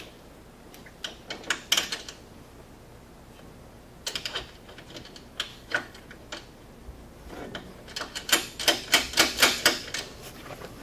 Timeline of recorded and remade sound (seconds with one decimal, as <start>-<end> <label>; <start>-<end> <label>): 0.0-5.5 recorded; 5.5-6.0 remade; 6.0-10.8 recorded